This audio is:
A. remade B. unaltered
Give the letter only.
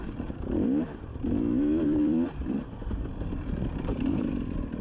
A